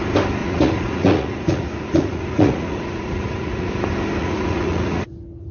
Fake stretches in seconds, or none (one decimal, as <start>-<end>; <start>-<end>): 0.4-3.7; 4.2-5.1